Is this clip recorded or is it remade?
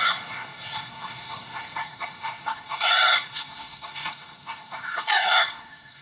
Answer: remade